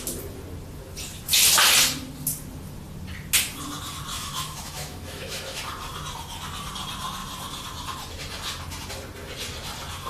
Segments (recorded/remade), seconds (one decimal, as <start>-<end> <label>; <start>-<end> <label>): 0.0-4.1 recorded; 4.1-5.6 remade; 5.6-10.1 recorded